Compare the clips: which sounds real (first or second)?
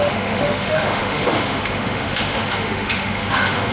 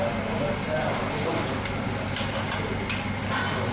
second